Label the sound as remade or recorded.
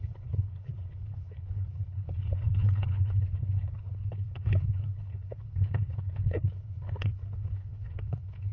remade